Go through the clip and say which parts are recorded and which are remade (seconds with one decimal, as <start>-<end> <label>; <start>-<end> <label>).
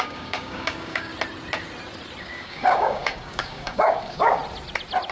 0.0-1.1 remade; 1.1-2.2 recorded; 2.2-4.4 remade; 4.4-5.1 recorded